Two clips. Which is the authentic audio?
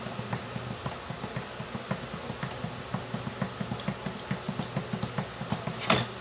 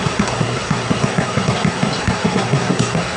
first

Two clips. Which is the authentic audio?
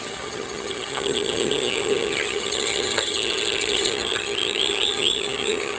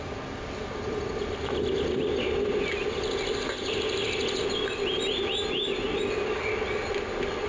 second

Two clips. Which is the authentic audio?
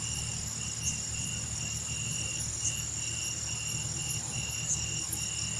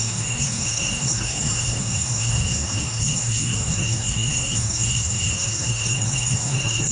first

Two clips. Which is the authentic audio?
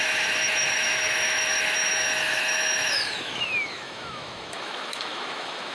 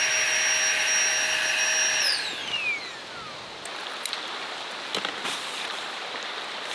second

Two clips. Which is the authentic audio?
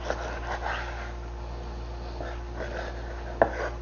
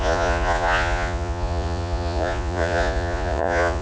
first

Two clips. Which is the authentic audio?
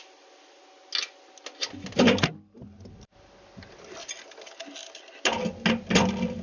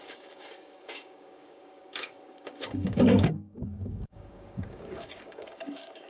first